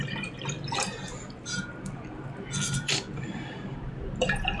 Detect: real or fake fake